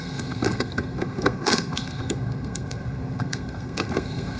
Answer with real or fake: fake